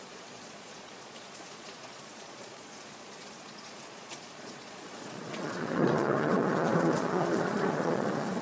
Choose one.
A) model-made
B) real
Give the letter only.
A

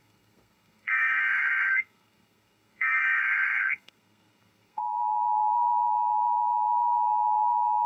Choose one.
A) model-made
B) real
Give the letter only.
A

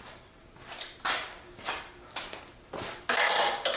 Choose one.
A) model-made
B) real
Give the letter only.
B